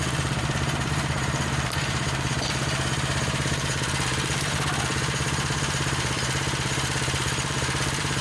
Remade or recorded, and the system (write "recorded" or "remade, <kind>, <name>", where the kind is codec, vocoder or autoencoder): remade, vocoder, BigVGAN v2